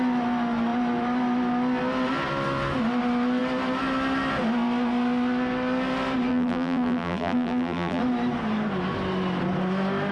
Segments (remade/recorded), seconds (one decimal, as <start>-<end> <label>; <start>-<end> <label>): 0.0-6.3 recorded; 6.3-8.0 remade; 8.0-10.1 recorded